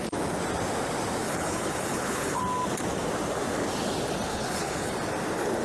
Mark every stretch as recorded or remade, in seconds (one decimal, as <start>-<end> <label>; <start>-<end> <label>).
0.0-1.2 recorded; 1.2-2.4 remade; 2.4-4.3 recorded; 4.3-4.9 remade; 4.9-5.6 recorded